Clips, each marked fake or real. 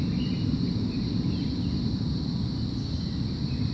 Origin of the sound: real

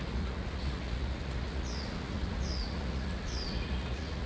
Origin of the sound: fake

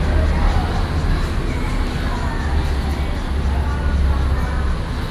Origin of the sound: real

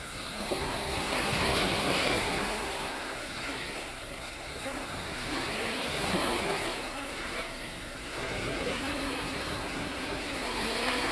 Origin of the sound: fake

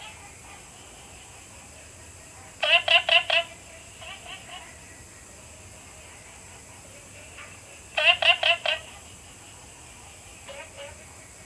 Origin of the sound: real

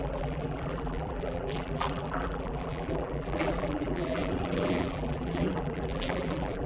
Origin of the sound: fake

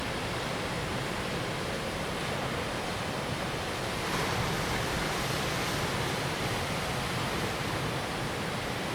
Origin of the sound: fake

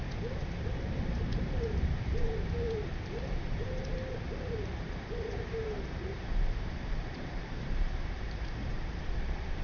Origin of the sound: fake